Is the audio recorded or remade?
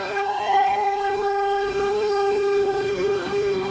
remade